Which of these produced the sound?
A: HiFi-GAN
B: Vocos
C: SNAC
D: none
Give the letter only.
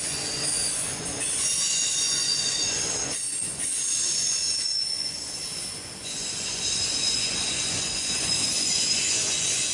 B